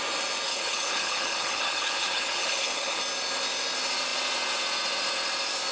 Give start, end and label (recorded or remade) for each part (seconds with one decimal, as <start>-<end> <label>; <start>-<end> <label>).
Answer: 0.0-0.5 recorded; 0.5-3.0 remade; 3.0-5.7 recorded